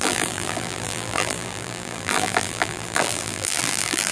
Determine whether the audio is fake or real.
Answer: fake